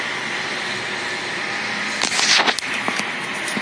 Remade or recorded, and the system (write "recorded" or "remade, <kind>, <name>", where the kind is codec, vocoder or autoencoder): recorded